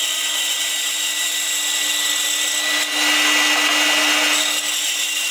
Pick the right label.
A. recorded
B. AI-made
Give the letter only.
A